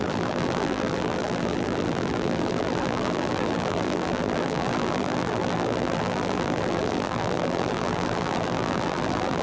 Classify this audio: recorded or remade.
remade